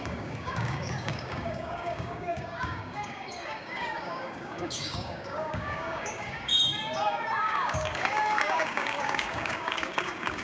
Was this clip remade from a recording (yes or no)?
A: yes